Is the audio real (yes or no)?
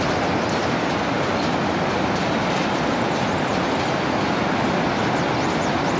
yes